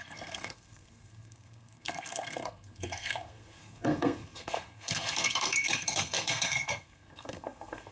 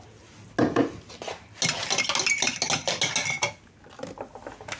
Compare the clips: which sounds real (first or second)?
second